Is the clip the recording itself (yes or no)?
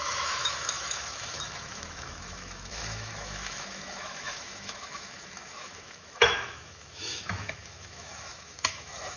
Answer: no